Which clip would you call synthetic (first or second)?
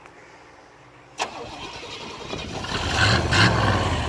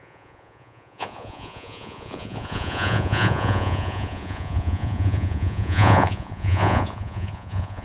second